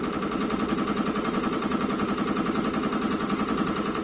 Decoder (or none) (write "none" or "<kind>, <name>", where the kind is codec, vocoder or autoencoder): vocoder, BigVGAN v2